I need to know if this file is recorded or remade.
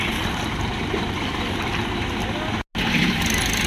recorded